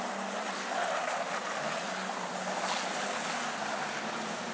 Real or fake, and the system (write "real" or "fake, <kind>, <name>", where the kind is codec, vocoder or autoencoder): real